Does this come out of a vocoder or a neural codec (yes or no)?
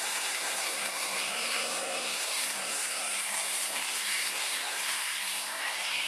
yes